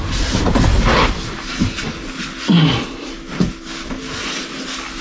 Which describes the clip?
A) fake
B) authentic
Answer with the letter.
B